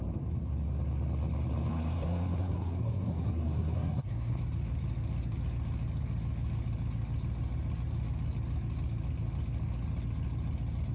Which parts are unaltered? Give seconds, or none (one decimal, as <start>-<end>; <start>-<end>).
0.0-1.7; 4.4-10.9